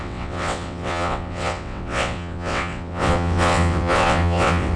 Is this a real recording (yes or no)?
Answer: no